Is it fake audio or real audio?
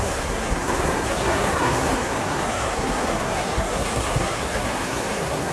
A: fake